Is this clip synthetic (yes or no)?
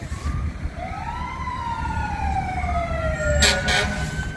no